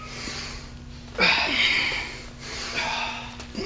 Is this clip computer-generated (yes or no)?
no